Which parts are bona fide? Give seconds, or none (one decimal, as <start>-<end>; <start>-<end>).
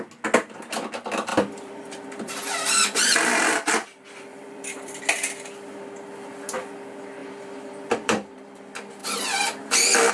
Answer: 0.0-1.3; 5.0-7.2; 8.6-9.0